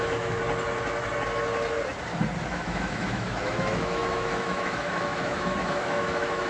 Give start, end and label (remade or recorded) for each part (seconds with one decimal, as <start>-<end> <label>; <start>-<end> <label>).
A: 0.0-0.4 remade; 0.4-2.5 recorded; 2.5-6.5 remade